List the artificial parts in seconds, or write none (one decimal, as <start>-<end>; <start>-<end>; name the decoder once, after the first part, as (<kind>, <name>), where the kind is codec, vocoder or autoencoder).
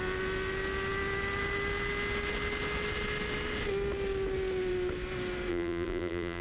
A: 5.5-6.4 (vocoder, BigVGAN v2)